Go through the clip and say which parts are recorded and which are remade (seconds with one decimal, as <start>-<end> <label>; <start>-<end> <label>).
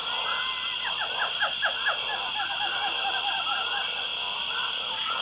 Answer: 0.0-5.2 recorded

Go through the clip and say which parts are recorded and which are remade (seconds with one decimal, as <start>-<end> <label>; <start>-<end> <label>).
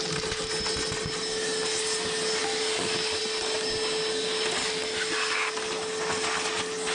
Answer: 0.0-6.9 recorded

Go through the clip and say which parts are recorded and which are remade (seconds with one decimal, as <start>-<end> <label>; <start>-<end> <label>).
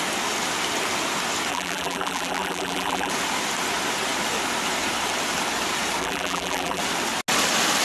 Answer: 0.0-1.5 recorded; 1.5-3.1 remade; 3.1-6.0 recorded; 6.0-6.8 remade; 6.8-7.8 recorded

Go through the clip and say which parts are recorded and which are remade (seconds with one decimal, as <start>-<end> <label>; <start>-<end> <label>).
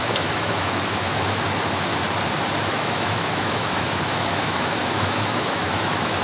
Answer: 0.0-1.9 remade; 1.9-2.7 recorded; 2.7-6.2 remade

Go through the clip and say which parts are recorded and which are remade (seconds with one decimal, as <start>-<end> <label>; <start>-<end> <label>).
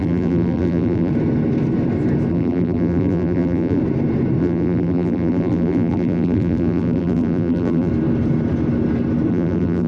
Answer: 0.0-1.1 remade; 1.1-2.3 recorded; 2.3-3.8 remade; 3.8-4.4 recorded; 4.4-7.9 remade; 7.9-9.3 recorded; 9.3-9.9 remade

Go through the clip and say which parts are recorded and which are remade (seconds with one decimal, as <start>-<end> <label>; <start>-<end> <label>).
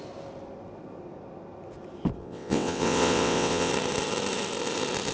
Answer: 0.0-2.2 recorded; 2.2-3.7 remade; 3.7-5.1 recorded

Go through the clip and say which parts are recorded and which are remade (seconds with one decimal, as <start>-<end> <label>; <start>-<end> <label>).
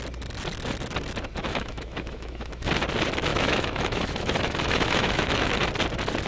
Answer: 0.0-1.4 recorded; 1.4-2.7 remade; 2.7-3.3 recorded; 3.3-5.7 remade; 5.7-6.3 recorded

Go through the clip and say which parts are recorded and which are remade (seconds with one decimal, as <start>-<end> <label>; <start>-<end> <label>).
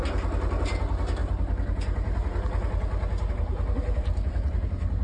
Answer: 0.0-5.0 recorded